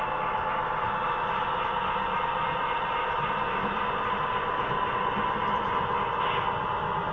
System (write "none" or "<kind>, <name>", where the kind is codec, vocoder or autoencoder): none